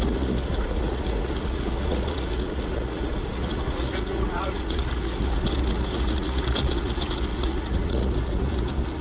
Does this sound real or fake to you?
fake